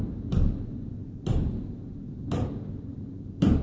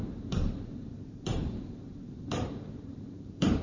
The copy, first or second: second